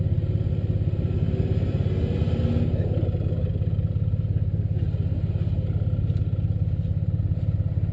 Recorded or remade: recorded